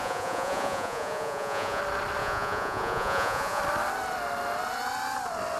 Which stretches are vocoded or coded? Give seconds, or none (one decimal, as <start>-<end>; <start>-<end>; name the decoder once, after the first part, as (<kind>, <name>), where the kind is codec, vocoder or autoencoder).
0.0-1.8 (vocoder, Vocos); 2.2-3.6